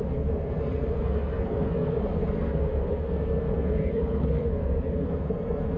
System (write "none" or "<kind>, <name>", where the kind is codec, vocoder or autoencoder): codec, SNAC